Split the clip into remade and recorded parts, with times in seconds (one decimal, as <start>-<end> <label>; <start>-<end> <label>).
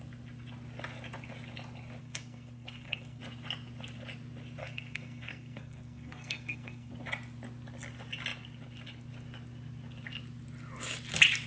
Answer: 0.0-2.0 recorded; 2.0-3.2 remade; 3.2-4.6 recorded; 4.6-6.9 remade; 6.9-11.5 recorded